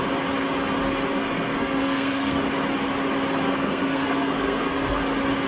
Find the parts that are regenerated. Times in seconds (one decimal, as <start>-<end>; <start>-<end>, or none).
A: 1.1-2.4; 3.4-5.0